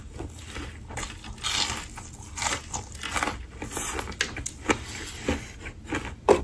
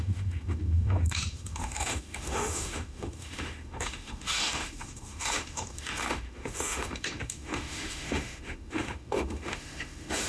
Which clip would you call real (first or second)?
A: first